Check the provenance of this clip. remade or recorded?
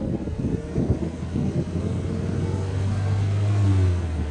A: remade